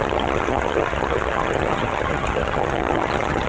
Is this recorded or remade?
remade